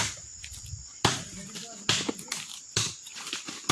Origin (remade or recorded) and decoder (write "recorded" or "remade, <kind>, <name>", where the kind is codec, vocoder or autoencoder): recorded